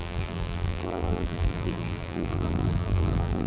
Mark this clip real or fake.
fake